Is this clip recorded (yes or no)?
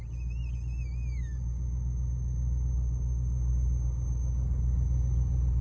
yes